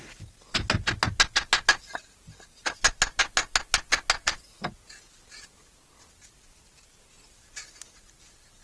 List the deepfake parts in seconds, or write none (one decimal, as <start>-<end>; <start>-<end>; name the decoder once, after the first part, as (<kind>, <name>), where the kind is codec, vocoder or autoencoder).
none